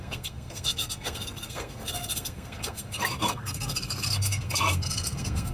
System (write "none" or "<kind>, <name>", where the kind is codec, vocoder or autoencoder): codec, SNAC